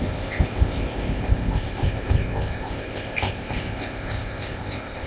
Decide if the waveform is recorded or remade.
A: remade